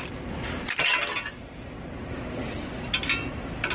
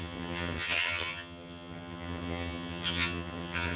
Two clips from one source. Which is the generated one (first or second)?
second